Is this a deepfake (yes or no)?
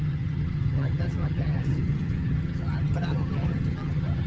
yes